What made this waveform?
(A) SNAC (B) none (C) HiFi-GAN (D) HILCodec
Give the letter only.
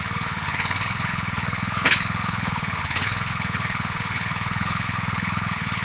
D